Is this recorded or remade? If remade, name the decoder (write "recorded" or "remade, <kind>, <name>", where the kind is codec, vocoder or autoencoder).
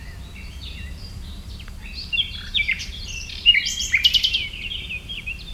remade, vocoder, BigVGAN v2